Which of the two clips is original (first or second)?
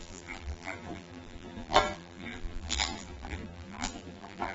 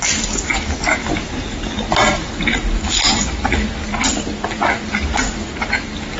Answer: second